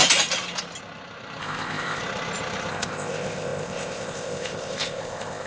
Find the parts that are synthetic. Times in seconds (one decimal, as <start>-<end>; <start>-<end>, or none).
1.4-2.0; 2.7-5.5